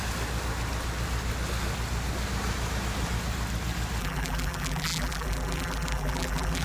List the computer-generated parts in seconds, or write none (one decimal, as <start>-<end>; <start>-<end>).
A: 4.0-6.6